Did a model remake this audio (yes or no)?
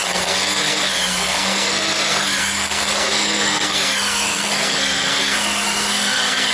yes